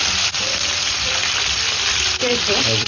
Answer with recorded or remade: remade